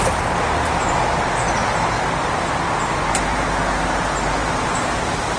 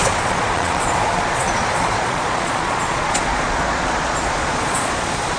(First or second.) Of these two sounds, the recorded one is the first